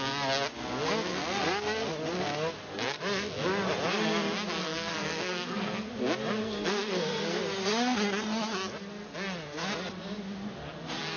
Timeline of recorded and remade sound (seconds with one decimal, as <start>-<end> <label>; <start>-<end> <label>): 0.0-4.6 recorded; 4.6-5.9 remade; 5.9-6.4 recorded; 6.4-7.4 remade; 7.4-11.2 recorded